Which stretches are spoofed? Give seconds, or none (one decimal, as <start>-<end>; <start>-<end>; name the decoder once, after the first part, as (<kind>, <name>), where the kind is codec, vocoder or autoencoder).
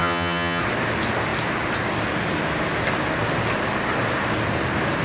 0.0-0.6 (vocoder, HiFi-GAN)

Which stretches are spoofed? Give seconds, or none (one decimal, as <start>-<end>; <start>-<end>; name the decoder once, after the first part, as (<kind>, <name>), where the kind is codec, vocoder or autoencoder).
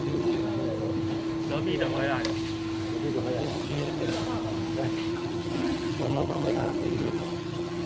0.0-0.4 (vocoder, HiFi-GAN); 3.4-4.1; 5.1-7.9